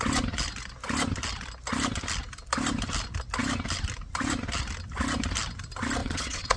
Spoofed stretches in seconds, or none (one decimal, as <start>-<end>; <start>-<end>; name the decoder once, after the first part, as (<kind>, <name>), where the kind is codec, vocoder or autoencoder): 6.0-6.6 (vocoder, WaveNeXt)